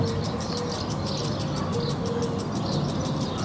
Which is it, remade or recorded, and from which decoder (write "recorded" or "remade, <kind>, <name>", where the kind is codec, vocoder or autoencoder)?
recorded